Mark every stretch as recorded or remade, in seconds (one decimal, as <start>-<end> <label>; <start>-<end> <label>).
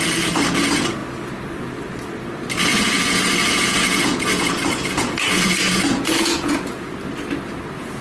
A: 0.0-2.7 recorded; 2.7-6.9 remade; 6.9-8.0 recorded